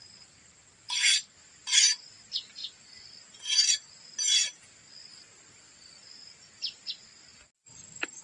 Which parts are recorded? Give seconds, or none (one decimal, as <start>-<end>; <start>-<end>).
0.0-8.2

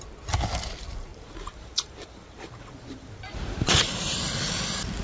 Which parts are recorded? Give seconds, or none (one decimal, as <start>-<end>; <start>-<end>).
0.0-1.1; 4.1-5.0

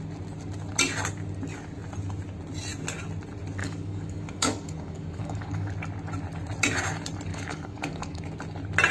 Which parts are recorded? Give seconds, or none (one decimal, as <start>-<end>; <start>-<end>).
0.0-3.6; 5.7-7.3; 8.2-8.9

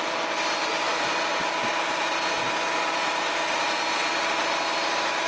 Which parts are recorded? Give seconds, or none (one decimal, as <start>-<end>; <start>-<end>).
0.0-5.3

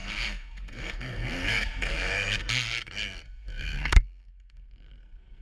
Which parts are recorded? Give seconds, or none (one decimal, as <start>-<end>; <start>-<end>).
none